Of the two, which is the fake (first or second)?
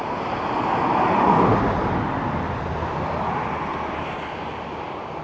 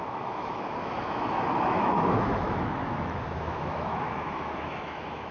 second